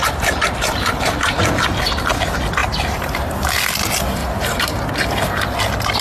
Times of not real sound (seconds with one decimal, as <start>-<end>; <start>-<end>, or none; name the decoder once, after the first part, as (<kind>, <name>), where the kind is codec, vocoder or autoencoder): 0.0-1.5 (vocoder, BigVGAN v2); 2.6-3.5; 4.2-4.8